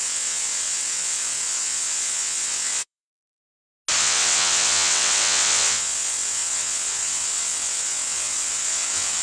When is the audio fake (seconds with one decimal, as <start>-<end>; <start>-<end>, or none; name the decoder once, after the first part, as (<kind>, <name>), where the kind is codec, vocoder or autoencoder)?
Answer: 0.0-3.4 (vocoder, WaveNeXt); 4.0-9.2